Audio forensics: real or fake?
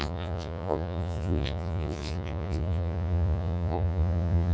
fake